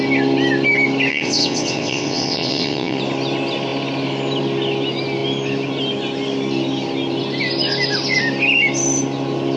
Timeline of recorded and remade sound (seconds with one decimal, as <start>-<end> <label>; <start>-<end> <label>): 0.0-1.1 recorded; 1.1-3.0 remade; 3.0-9.6 recorded